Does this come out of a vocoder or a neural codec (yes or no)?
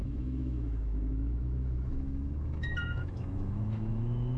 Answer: yes